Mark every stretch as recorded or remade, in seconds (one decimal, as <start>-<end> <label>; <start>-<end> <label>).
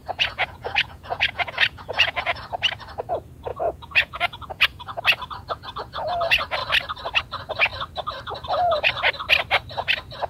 0.0-2.4 remade; 2.4-3.5 recorded; 3.5-5.0 remade; 5.0-10.3 recorded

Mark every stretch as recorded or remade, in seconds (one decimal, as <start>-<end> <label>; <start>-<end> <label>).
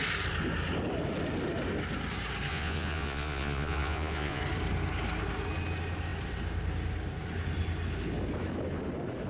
0.0-2.5 recorded; 2.5-4.4 remade; 4.4-9.3 recorded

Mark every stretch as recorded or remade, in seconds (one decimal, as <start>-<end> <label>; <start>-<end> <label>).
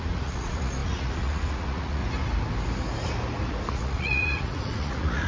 0.0-2.0 remade; 2.0-3.7 recorded; 3.7-5.3 remade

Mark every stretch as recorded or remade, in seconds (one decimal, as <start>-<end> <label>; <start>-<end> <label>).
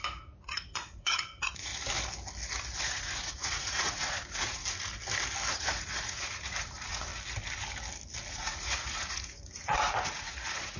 0.0-1.7 remade; 1.7-2.8 recorded; 2.8-4.6 remade; 4.6-5.5 recorded; 5.5-7.1 remade; 7.1-8.3 recorded; 8.3-10.8 remade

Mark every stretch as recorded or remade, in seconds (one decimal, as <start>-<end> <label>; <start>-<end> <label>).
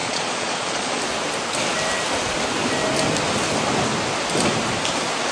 0.0-1.0 remade; 1.0-5.3 recorded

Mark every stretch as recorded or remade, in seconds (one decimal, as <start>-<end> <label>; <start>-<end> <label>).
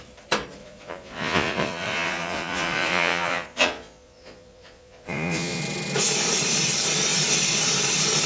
0.0-0.6 recorded; 0.6-5.6 remade; 5.6-8.3 recorded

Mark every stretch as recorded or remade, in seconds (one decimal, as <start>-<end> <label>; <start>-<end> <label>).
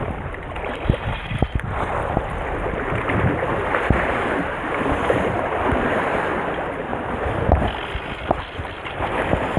0.0-9.6 recorded